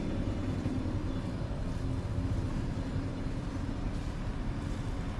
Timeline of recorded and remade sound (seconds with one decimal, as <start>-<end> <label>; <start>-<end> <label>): 0.0-5.2 recorded